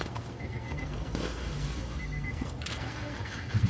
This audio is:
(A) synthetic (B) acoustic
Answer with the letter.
A